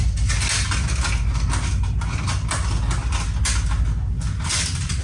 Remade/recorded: recorded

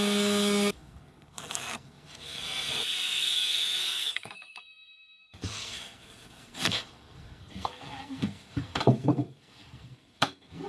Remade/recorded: remade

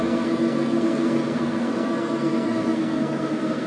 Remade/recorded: remade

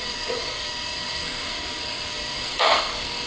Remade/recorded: remade